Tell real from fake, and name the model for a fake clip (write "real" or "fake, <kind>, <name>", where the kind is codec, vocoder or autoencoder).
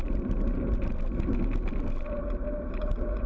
real